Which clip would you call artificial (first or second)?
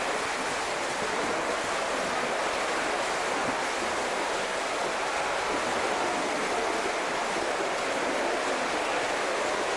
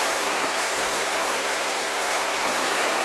second